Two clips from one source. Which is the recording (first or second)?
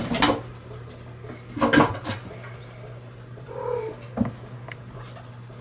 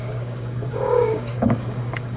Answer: first